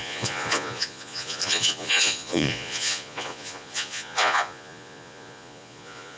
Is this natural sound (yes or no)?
no